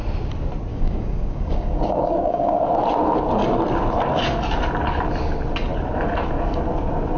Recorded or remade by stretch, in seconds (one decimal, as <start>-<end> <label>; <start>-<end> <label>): 0.0-0.7 recorded; 0.7-2.7 remade; 2.7-7.2 recorded